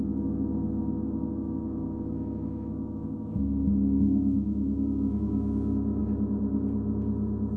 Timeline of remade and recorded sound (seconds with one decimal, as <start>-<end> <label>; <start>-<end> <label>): 0.0-6.0 remade; 6.0-7.6 recorded